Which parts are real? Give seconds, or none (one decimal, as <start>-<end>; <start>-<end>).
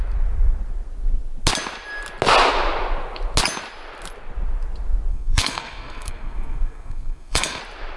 0.0-5.1; 7.6-8.0